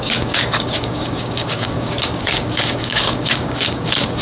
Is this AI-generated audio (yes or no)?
yes